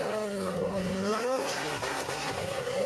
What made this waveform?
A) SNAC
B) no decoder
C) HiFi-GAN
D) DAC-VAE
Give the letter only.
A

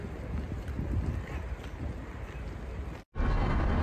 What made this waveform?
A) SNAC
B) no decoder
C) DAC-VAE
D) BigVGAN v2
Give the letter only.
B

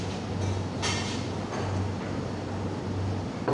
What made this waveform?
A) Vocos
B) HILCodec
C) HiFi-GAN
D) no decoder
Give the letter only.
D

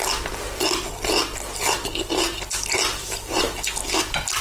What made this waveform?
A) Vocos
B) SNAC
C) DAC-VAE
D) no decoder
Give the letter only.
D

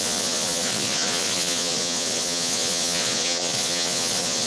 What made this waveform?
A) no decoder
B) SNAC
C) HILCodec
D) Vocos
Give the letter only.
D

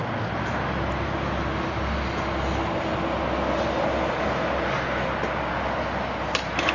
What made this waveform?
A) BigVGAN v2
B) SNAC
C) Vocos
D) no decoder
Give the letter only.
D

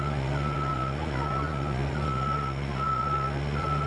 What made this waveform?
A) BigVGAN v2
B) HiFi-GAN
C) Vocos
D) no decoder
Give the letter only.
C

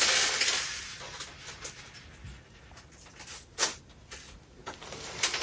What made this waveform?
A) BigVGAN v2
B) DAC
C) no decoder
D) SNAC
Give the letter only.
C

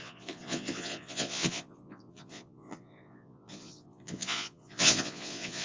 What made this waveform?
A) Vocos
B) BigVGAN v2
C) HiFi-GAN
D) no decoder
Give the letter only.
A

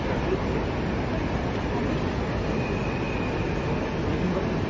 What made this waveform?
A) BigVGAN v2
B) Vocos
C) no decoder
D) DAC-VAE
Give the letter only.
C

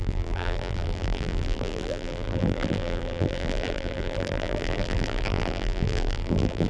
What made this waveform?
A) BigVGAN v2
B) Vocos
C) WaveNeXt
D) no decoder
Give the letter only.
A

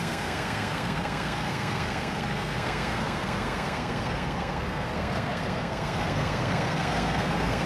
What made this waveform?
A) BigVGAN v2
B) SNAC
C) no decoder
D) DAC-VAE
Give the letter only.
B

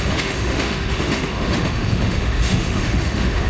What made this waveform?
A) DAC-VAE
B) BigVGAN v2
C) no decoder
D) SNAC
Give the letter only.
A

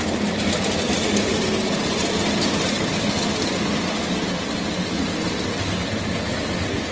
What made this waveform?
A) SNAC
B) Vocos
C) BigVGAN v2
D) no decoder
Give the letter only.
D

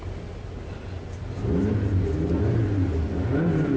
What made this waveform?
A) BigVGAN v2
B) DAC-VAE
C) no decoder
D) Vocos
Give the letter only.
C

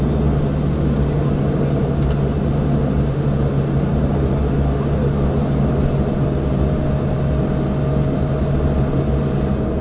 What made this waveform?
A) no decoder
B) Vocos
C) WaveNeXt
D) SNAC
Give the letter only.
A